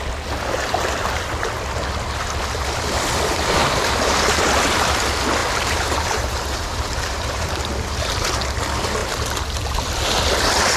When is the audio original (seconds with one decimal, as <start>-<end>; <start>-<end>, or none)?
0.0-3.6; 5.0-5.4; 8.4-10.8